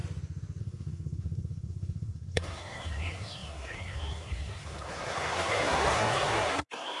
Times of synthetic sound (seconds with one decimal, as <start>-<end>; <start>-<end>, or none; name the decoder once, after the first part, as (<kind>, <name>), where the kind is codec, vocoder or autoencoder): 0.6-7.0 (codec, SNAC)